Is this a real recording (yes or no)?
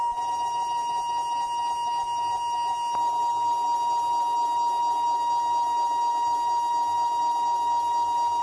yes